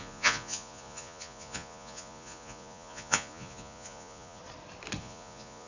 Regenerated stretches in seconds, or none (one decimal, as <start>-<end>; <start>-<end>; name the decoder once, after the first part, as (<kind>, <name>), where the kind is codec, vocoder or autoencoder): 0.0-4.4 (vocoder, Vocos); 5.0-5.7

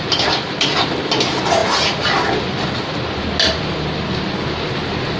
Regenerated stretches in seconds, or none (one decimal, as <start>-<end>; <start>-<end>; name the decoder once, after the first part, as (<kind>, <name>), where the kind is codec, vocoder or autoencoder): none

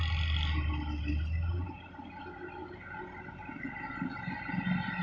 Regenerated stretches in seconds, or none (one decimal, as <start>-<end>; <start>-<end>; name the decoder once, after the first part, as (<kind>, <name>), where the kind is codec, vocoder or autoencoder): none